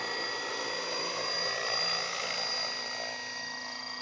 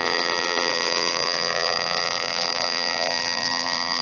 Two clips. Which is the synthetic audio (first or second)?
second